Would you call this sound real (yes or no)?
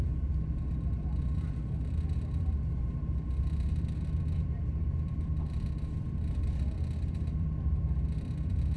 no